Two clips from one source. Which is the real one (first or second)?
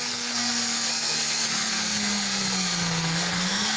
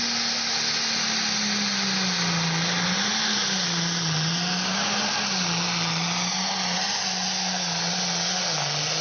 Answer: second